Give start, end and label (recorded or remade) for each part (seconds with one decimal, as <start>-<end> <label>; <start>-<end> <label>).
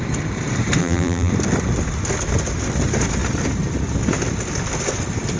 0.0-0.8 recorded; 0.8-1.3 remade; 1.3-5.4 recorded